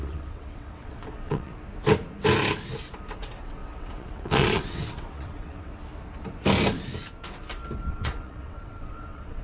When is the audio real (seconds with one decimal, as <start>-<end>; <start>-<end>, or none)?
1.5-3.1; 5.7-7.9